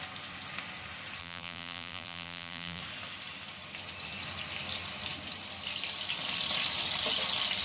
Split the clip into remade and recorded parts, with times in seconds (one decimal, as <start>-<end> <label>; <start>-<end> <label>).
0.0-1.2 recorded; 1.2-2.8 remade; 2.8-7.6 recorded